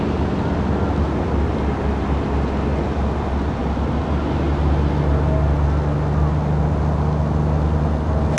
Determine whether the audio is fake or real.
real